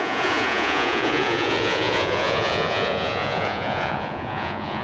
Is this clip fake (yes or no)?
yes